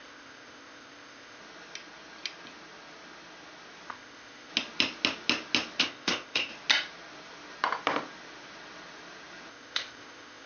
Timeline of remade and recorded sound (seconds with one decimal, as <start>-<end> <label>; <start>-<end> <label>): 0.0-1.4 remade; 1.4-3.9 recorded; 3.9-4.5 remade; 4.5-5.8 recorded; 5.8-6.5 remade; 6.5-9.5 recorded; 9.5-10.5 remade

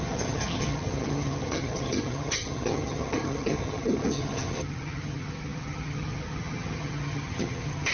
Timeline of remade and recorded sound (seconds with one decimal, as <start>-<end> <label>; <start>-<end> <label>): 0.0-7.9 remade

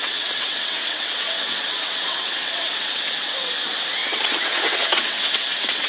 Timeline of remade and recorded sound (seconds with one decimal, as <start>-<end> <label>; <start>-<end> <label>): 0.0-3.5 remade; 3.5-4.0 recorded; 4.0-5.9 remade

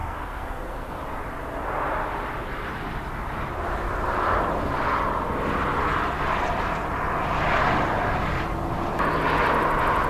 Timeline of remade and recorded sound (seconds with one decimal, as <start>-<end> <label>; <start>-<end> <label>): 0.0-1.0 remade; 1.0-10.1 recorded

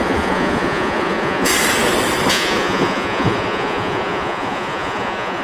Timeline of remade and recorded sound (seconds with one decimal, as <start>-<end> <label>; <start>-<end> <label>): 0.0-1.5 remade; 1.5-2.3 recorded; 2.3-5.4 remade

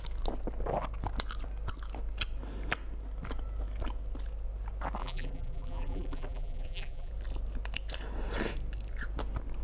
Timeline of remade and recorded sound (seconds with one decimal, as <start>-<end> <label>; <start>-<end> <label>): 0.0-5.0 recorded; 5.0-7.1 remade; 7.1-9.6 recorded

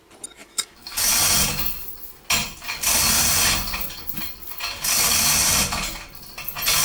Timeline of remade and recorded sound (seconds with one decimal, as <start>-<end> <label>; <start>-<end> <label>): 0.0-0.4 recorded; 0.4-1.1 remade; 1.1-6.8 recorded